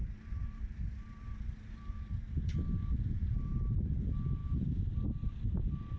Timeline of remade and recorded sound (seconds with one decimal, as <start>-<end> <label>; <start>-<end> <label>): 0.0-2.5 remade; 2.5-3.2 recorded; 3.2-3.8 remade; 3.8-6.0 recorded